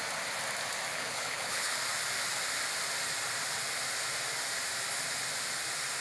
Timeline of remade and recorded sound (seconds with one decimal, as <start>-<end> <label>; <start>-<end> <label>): 0.0-0.9 recorded; 0.9-1.8 remade; 1.8-6.0 recorded